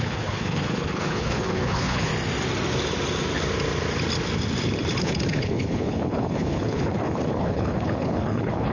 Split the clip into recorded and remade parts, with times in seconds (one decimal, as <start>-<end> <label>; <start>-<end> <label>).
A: 0.0-2.1 remade; 2.1-5.0 recorded; 5.0-8.7 remade